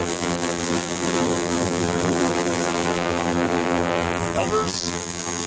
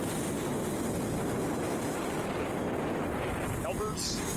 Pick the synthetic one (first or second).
first